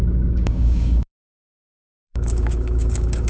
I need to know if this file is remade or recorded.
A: remade